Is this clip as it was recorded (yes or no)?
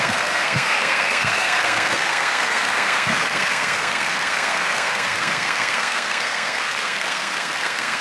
no